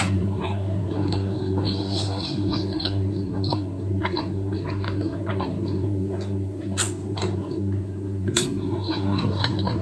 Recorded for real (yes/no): no